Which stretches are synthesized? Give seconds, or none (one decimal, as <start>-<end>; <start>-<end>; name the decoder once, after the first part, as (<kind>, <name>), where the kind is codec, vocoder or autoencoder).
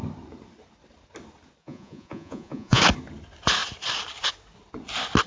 1.6-2.8 (vocoder, Vocos)